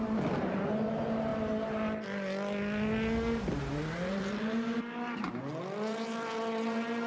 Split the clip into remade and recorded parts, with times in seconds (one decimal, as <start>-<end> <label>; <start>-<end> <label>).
0.0-7.1 recorded